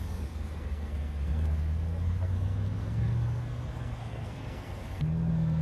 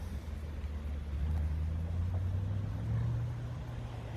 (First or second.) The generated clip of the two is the first